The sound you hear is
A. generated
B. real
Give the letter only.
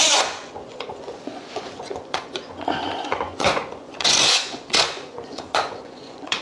A